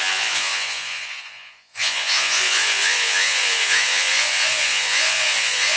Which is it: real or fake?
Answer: fake